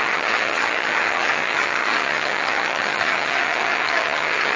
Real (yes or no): no